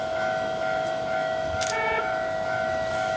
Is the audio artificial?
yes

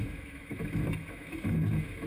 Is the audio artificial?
yes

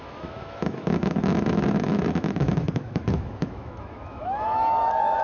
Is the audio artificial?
yes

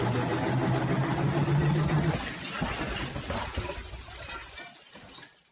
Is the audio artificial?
no